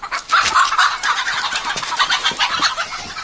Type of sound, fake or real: real